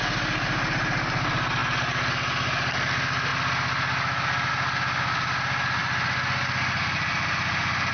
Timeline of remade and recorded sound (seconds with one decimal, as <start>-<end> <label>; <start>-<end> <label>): 0.0-7.9 recorded